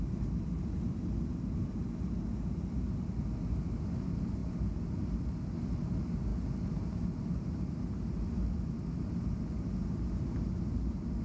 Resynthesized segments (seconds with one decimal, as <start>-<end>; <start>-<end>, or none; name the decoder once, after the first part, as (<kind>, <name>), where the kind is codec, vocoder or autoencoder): none